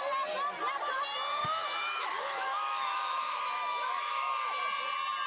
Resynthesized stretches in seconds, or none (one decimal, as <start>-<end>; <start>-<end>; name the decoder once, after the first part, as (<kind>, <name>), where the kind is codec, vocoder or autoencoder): 1.4-4.6 (autoencoder, DAC-VAE)